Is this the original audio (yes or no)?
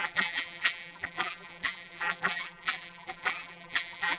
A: no